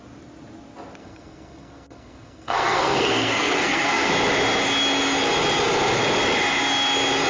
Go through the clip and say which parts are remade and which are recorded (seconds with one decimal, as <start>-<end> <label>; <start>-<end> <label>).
0.0-1.0 recorded; 1.0-4.1 remade; 4.1-7.3 recorded